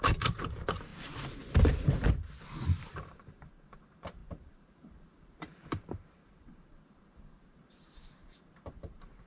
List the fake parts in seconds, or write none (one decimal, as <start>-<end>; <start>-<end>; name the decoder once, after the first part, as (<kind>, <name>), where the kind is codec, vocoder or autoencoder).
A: 0.0-0.9 (vocoder, BigVGAN v2); 2.8-9.3